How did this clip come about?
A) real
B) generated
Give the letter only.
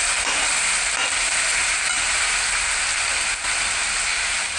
A